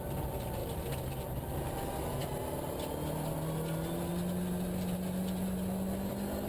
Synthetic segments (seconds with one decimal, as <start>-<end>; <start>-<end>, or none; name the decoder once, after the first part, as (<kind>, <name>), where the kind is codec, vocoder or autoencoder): none